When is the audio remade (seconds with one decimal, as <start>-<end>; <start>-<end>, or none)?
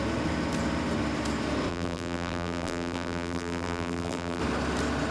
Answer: 1.7-4.4